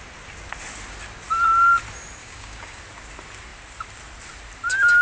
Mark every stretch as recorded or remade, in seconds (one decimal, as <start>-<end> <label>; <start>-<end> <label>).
0.0-2.2 recorded; 2.2-2.8 remade; 2.8-5.0 recorded